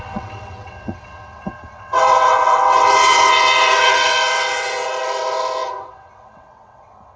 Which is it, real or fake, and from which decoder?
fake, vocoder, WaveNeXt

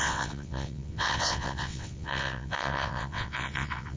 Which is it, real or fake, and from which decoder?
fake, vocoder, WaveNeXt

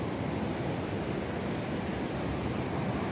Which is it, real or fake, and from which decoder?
real